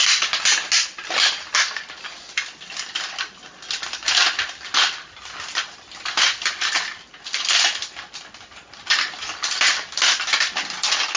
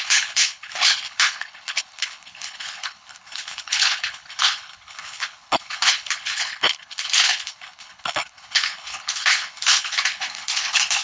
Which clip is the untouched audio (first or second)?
first